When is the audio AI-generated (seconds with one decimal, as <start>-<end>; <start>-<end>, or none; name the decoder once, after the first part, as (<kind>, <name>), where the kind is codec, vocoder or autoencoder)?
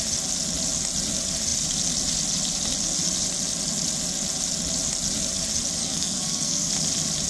5.8-6.7 (codec, SNAC)